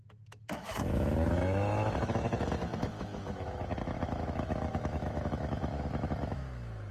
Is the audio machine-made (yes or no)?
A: yes